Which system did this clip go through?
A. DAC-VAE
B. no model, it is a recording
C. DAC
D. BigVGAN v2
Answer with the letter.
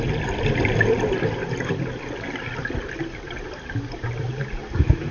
B